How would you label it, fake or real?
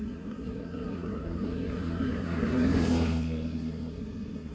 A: fake